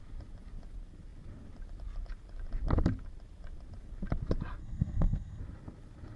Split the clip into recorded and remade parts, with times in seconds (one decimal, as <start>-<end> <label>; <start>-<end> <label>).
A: 0.0-4.6 recorded; 4.6-5.4 remade; 5.4-6.2 recorded